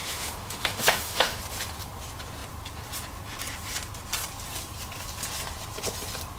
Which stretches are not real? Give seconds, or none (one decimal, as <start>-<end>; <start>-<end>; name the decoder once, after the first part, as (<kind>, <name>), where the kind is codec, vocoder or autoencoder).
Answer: 0.0-1.4 (autoencoder, DAC-VAE)